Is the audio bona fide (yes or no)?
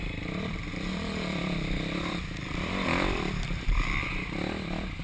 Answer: no